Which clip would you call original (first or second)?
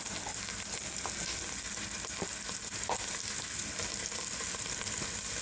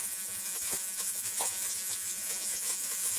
first